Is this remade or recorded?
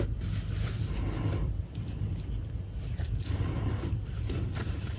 recorded